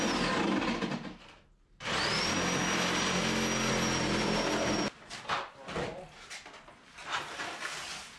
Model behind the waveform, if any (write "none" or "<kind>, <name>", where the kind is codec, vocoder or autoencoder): none